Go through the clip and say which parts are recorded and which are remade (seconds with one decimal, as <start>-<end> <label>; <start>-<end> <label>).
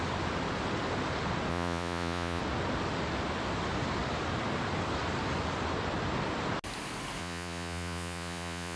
0.0-1.5 recorded; 1.5-2.4 remade; 2.4-7.2 recorded; 7.2-8.8 remade